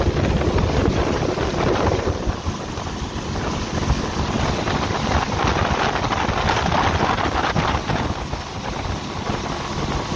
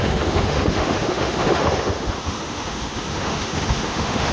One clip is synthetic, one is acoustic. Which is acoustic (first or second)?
first